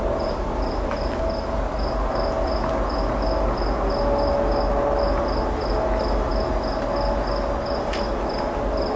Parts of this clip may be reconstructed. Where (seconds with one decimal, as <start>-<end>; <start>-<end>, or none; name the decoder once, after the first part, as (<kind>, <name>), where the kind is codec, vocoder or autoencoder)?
none